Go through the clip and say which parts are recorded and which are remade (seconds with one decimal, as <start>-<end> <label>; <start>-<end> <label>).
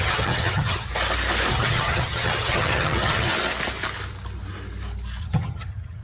0.0-0.9 remade; 0.9-1.5 recorded; 1.5-3.3 remade; 3.3-5.2 recorded; 5.2-6.0 remade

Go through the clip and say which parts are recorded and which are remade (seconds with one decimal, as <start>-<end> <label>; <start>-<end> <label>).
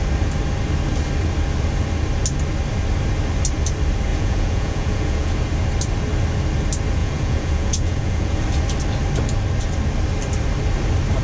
0.0-4.1 recorded; 4.1-5.3 remade; 5.3-7.0 recorded; 7.0-8.4 remade; 8.4-11.2 recorded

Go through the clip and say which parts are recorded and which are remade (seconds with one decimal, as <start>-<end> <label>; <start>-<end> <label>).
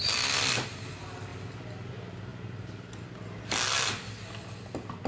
0.0-5.1 recorded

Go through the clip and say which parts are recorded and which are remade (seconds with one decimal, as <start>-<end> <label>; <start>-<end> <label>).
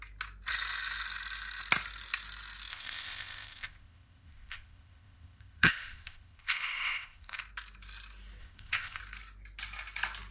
0.0-2.7 recorded; 2.7-7.4 remade; 7.4-8.4 recorded; 8.4-9.0 remade; 9.0-10.3 recorded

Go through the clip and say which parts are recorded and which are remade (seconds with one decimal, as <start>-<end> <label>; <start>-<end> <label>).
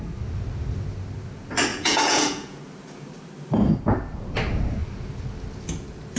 0.0-1.7 recorded; 1.7-2.6 remade; 2.6-6.2 recorded